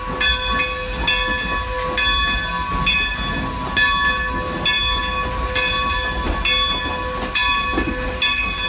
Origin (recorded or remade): recorded